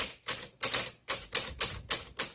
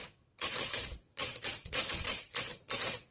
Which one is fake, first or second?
second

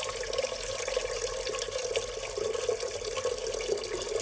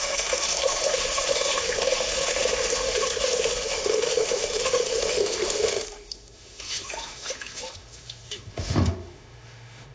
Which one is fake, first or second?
second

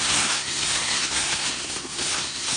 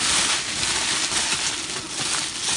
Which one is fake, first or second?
first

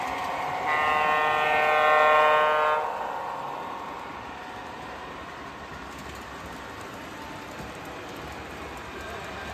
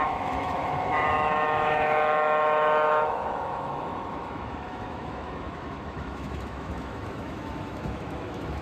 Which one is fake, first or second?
second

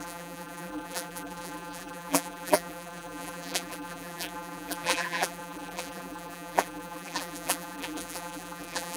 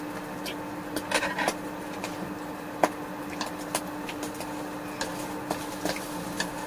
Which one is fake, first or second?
first